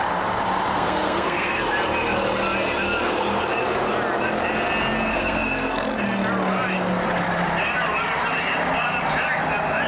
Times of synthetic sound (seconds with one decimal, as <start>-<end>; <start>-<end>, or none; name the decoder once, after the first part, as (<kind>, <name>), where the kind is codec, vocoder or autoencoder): 0.7-1.6 (codec, SNAC); 5.1-5.9